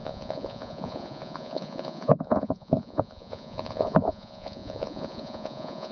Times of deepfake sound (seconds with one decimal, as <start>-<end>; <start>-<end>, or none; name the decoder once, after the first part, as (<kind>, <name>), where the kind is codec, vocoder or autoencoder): 0.0-5.9 (vocoder, Vocos)